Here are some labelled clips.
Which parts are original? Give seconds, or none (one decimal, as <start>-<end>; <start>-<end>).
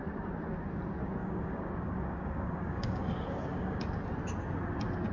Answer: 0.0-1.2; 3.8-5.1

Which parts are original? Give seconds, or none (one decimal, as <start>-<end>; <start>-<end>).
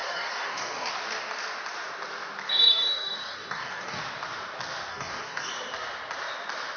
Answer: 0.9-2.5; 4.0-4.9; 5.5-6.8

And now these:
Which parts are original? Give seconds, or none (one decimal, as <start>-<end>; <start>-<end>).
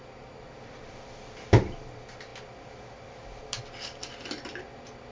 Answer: 0.0-5.1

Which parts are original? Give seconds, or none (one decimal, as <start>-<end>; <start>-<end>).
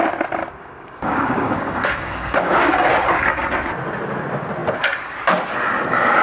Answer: 0.0-0.4; 2.9-6.2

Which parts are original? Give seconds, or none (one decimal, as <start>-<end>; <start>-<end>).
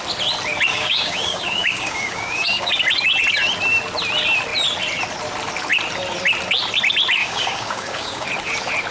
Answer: 0.0-0.7; 2.7-7.2; 8.3-8.9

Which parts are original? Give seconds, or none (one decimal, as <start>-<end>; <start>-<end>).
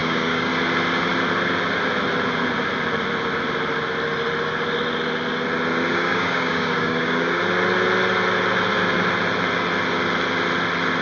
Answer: 0.5-5.9; 7.4-11.0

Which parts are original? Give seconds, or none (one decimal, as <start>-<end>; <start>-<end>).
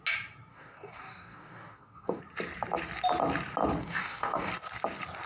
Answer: 0.0-0.5; 2.2-3.8; 4.5-5.3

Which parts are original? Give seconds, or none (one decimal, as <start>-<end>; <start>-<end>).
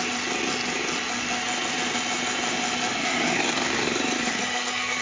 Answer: 0.0-3.0